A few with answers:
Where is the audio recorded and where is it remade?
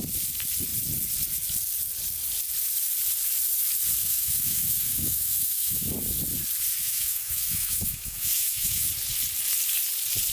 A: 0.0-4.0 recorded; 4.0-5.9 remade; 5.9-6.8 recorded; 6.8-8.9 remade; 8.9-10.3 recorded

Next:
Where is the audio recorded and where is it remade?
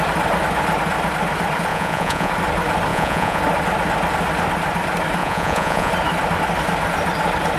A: 0.0-1.7 recorded; 1.7-2.3 remade; 2.3-2.9 recorded; 2.9-3.4 remade; 3.4-5.2 recorded; 5.2-5.9 remade; 5.9-7.6 recorded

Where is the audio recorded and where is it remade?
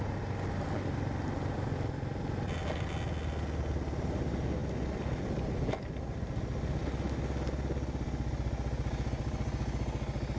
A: 0.0-10.4 recorded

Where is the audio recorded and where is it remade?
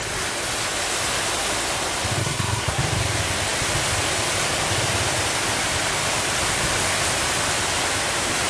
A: 0.0-2.2 recorded; 2.2-2.8 remade; 2.8-8.5 recorded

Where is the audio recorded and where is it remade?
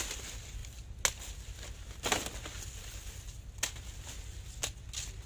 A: 0.0-5.3 recorded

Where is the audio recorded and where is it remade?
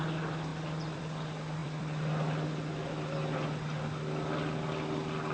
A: 0.0-0.5 recorded; 0.5-1.0 remade; 1.0-1.6 recorded; 1.6-2.9 remade; 2.9-5.3 recorded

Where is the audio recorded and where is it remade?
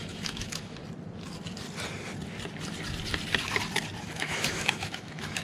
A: 0.0-0.8 remade; 0.8-4.0 recorded; 4.0-5.4 remade